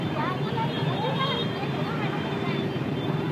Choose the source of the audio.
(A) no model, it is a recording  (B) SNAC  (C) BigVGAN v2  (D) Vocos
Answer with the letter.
C